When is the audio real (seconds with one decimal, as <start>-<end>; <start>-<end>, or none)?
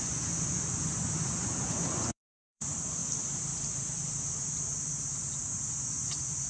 3.0-5.6